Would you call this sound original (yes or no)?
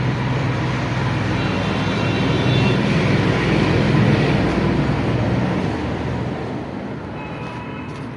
no